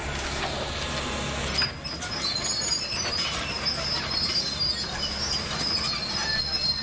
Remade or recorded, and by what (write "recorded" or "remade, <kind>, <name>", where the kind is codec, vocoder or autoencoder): recorded